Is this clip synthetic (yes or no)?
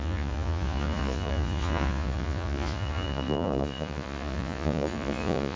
yes